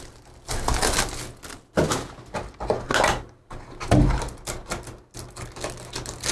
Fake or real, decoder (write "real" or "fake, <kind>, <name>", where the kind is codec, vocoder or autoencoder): real